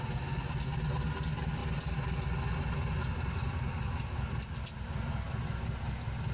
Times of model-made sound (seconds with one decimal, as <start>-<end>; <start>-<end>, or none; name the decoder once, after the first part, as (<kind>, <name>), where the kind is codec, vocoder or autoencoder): none